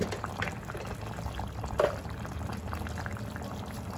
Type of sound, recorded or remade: recorded